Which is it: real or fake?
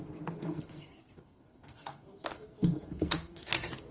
fake